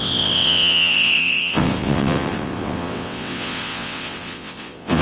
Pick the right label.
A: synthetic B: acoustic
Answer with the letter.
A